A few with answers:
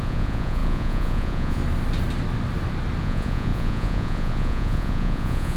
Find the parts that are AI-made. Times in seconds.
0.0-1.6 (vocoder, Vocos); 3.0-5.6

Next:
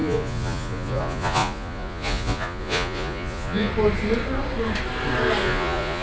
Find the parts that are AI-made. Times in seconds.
0.0-3.7 (vocoder, Vocos); 5.4-6.0

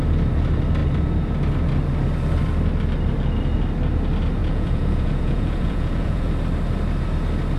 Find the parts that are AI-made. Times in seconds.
4.4-6.3 (vocoder, Vocos)

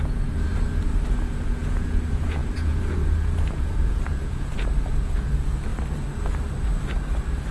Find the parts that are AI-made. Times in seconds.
0.0-0.5 (vocoder, Vocos); 1.3-5.7

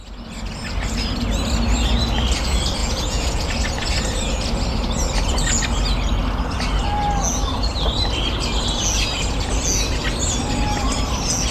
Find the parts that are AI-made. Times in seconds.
2.8-3.5 (vocoder, Vocos)